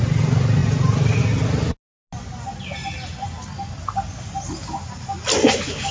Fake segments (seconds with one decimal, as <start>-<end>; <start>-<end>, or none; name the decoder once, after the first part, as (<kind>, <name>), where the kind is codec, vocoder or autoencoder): none